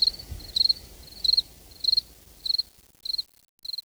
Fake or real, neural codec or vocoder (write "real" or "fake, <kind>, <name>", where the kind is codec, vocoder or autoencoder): real